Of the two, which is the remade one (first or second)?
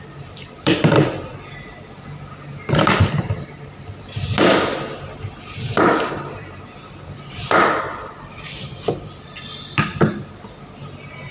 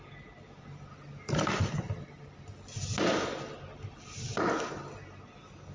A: first